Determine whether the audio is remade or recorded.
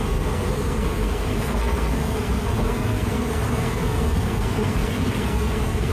remade